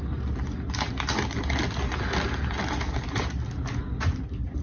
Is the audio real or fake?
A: real